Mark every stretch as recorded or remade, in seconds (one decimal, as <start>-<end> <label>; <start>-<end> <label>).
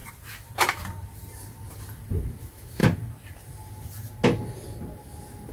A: 0.0-2.4 recorded; 2.4-2.8 remade; 2.8-5.5 recorded